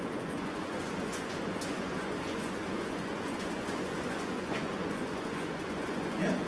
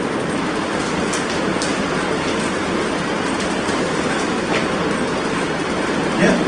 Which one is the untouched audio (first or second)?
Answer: second